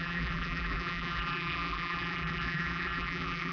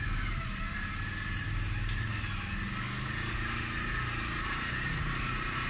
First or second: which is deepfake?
first